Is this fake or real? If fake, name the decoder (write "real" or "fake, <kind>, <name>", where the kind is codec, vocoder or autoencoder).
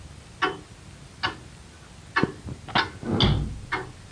real